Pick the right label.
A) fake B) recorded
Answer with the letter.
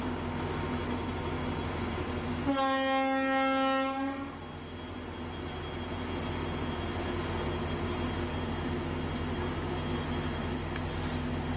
B